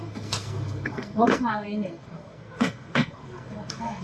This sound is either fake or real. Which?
fake